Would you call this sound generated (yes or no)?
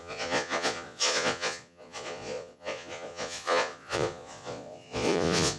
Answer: yes